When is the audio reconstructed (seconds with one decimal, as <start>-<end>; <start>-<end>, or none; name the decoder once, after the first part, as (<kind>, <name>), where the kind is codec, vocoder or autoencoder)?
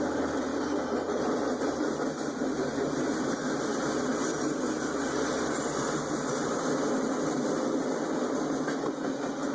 0.0-2.7 (vocoder, BigVGAN v2); 3.5-4.1; 7.8-9.5